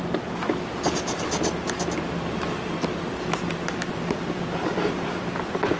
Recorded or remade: recorded